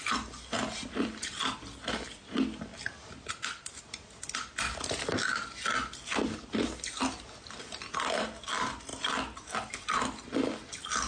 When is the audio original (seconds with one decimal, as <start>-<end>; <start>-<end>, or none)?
0.0-2.7; 3.3-8.9; 9.7-11.1